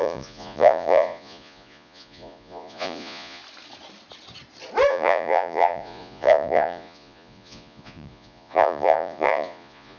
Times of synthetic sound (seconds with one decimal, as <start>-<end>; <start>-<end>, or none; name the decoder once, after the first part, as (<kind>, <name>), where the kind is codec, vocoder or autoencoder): 0.0-3.4 (vocoder, Vocos); 4.9-10.0